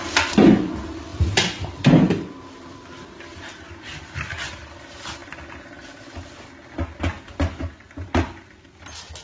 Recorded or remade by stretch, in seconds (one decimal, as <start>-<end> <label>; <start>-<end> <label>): 0.0-1.1 recorded; 1.1-4.0 remade; 4.0-9.2 recorded